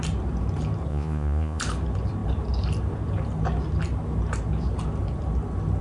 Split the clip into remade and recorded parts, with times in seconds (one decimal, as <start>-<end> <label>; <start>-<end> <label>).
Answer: 0.0-0.9 recorded; 0.9-1.6 remade; 1.6-5.8 recorded